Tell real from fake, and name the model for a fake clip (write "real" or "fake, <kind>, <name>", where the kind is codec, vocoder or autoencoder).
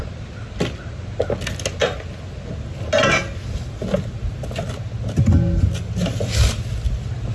real